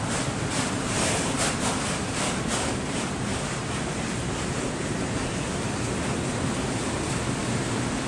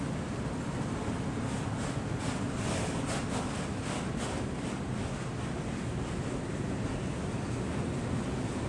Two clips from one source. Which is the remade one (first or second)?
first